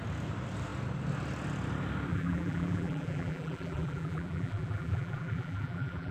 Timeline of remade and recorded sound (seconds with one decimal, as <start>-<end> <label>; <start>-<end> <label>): 0.0-2.1 recorded; 2.1-6.1 remade